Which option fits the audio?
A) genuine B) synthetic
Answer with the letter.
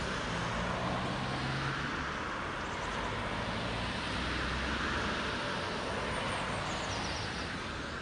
A